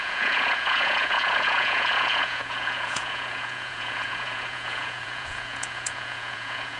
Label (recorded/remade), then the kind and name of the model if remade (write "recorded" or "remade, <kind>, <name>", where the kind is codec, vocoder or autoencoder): remade, vocoder, Vocos